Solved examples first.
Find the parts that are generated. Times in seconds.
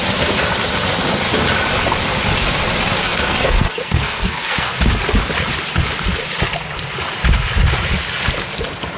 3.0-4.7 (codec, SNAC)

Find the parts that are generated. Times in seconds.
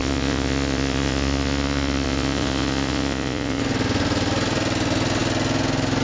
0.0-3.6 (vocoder, Vocos)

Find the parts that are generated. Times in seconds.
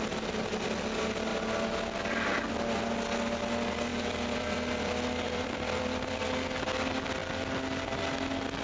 3.9-6.2 (vocoder, BigVGAN v2)